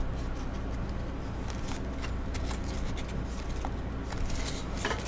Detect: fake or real real